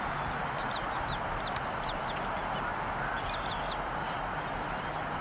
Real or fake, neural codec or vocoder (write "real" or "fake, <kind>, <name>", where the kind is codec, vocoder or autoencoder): real